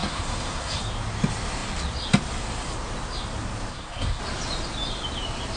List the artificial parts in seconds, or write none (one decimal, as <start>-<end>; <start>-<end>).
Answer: 0.0-0.8; 3.7-4.2